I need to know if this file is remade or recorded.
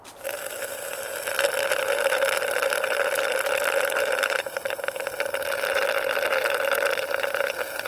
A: recorded